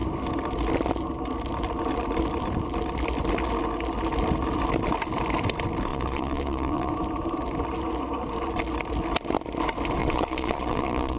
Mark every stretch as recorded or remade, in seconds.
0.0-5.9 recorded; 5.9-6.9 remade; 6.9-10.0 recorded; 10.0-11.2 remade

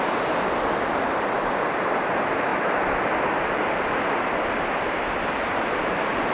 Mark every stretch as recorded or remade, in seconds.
0.0-6.3 recorded

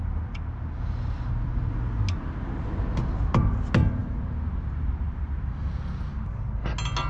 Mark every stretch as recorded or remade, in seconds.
0.0-4.0 recorded; 4.0-5.5 remade; 5.5-7.1 recorded